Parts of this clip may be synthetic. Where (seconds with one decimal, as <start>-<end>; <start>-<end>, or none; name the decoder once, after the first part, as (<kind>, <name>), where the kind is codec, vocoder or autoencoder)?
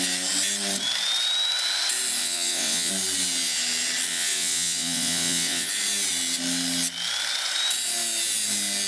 2.2-2.9 (vocoder, WaveNeXt); 4.1-5.7